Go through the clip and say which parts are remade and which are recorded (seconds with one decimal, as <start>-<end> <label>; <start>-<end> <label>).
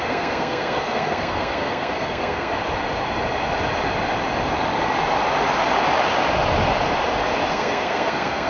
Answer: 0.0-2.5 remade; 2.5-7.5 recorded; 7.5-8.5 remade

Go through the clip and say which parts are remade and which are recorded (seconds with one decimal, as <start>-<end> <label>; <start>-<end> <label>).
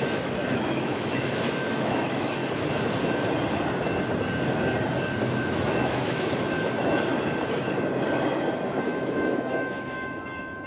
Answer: 0.0-2.4 remade; 2.4-5.4 recorded; 5.4-7.1 remade; 7.1-8.8 recorded; 8.8-10.7 remade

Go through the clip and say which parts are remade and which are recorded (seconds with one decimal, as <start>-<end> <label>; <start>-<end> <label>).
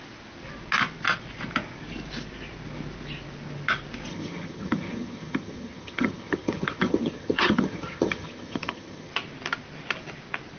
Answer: 0.0-4.1 recorded; 4.1-9.1 remade; 9.1-10.6 recorded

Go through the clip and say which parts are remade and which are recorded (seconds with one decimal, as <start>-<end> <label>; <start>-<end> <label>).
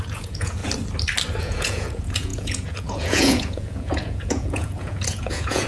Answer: 0.0-0.6 remade; 0.6-1.4 recorded; 1.4-5.7 remade